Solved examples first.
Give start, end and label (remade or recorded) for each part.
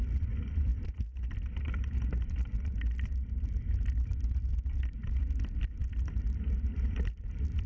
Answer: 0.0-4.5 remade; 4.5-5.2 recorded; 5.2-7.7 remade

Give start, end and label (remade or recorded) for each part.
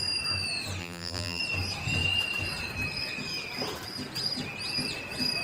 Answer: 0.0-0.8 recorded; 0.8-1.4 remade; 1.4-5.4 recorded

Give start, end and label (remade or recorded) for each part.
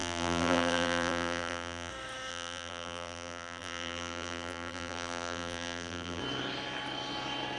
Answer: 0.0-1.9 remade; 1.9-2.3 recorded; 2.3-6.2 remade; 6.2-7.6 recorded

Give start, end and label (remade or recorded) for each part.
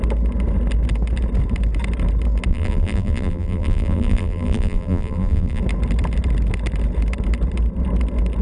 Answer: 0.0-2.5 recorded; 2.5-5.6 remade; 5.6-8.4 recorded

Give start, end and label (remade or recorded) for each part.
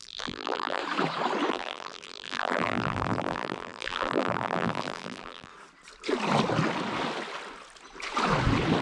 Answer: 0.0-0.8 remade; 0.8-1.5 recorded; 1.5-5.5 remade; 5.5-8.8 recorded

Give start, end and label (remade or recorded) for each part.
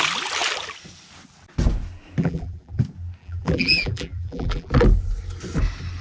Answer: 0.0-2.2 recorded; 2.2-2.8 remade; 2.8-3.2 recorded; 3.2-4.7 remade; 4.7-6.0 recorded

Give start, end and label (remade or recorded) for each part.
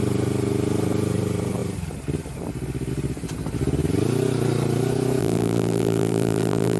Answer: 0.0-5.2 recorded; 5.2-6.8 remade